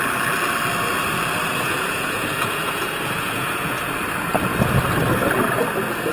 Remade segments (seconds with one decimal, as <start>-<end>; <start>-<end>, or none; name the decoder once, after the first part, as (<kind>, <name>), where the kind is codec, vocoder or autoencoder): 1.4-3.8 (vocoder, Vocos)